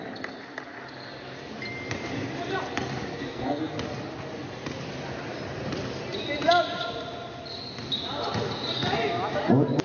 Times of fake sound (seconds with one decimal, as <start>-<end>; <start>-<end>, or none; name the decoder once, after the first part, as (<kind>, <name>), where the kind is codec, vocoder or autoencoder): 3.1-3.7 (codec, SNAC)